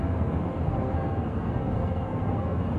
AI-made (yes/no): yes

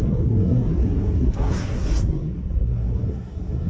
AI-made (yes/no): yes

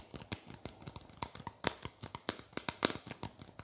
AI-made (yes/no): no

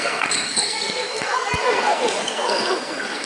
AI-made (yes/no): yes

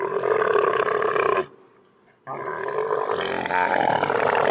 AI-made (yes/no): no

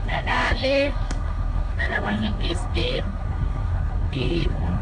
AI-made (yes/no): yes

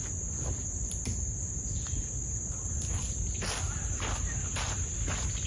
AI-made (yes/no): no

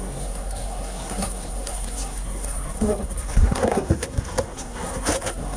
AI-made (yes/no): yes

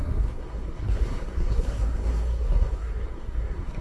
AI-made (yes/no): yes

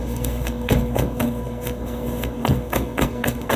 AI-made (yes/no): yes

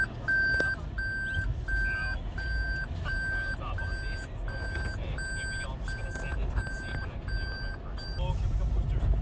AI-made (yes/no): no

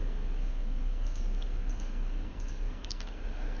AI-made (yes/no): yes